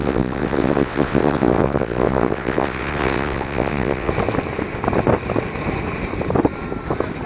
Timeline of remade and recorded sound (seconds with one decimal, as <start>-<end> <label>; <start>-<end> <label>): 0.0-4.1 remade; 4.1-7.3 recorded